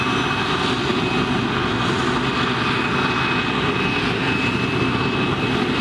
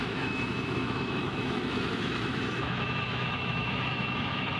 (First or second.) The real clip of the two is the first